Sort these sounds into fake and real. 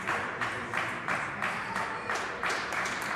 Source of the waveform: fake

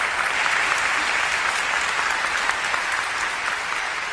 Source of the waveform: real